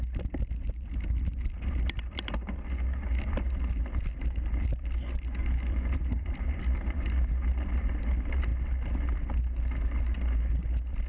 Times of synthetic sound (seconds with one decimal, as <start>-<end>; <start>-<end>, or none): none